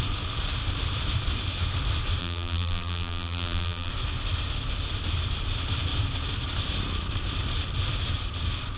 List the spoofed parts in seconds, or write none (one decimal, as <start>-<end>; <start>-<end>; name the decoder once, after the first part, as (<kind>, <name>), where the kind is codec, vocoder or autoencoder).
2.2-3.9 (vocoder, BigVGAN v2)